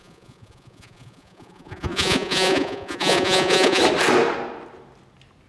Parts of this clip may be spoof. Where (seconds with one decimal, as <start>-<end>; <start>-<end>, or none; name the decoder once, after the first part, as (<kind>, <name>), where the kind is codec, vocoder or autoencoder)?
0.0-3.8 (vocoder, Vocos)